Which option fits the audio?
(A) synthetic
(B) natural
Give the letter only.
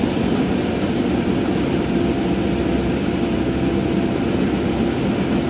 B